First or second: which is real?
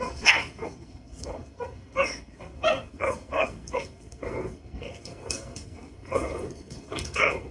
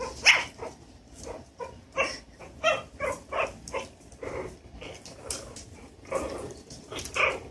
second